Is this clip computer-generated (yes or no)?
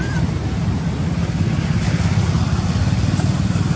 no